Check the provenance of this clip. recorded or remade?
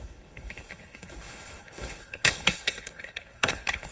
remade